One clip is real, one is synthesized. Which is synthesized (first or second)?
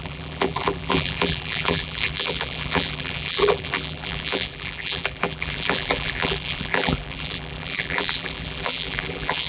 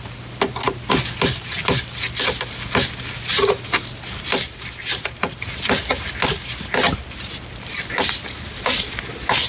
first